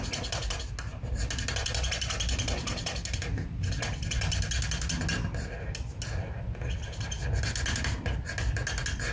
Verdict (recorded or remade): recorded